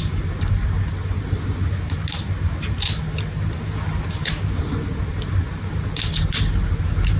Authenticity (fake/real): real